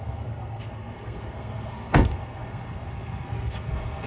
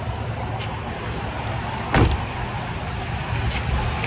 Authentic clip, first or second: second